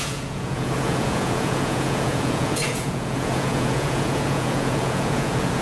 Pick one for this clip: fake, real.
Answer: fake